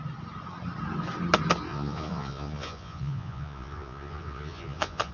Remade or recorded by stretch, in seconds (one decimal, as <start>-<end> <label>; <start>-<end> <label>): 0.0-1.7 recorded; 1.7-5.1 remade